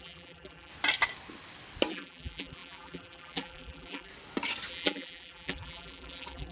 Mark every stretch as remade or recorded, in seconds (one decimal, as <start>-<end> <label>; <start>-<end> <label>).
0.0-0.7 remade; 0.7-1.9 recorded; 1.9-4.1 remade; 4.1-4.7 recorded; 4.7-6.5 remade